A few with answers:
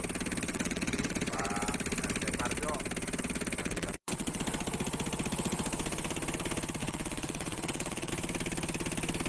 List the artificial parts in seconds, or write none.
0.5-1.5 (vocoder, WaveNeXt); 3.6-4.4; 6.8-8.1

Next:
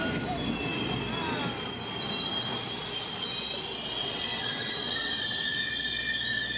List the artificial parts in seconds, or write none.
4.0-5.7 (vocoder, WaveNeXt)

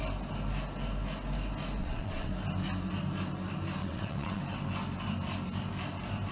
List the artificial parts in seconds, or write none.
1.8-2.3 (vocoder, WaveNeXt); 3.8-4.4

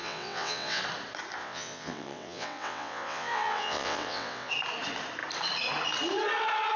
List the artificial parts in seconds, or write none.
0.0-0.8 (vocoder, WaveNeXt); 1.4-4.5

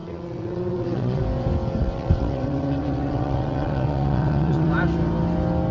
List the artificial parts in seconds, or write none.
0.0-1.2 (vocoder, WaveNeXt); 1.8-4.7

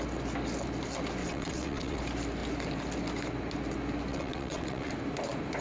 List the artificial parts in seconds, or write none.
1.2-2.0 (vocoder, WaveNeXt); 4.1-4.9

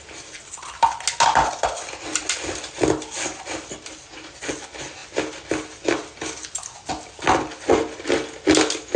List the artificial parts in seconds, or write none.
none